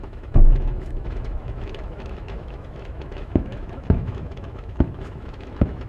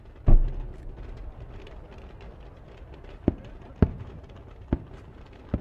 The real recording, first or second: second